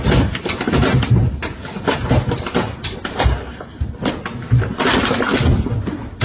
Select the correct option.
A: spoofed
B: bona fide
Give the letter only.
B